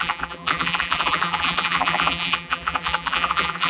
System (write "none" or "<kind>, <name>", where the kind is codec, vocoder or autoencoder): vocoder, BigVGAN v2